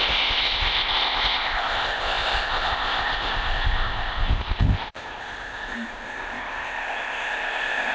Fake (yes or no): yes